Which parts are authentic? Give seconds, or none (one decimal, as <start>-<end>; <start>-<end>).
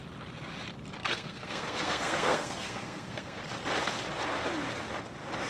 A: 0.0-1.0; 3.4-5.5